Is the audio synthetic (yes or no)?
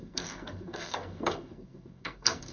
yes